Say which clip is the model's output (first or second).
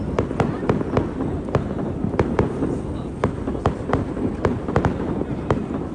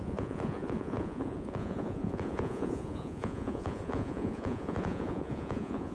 second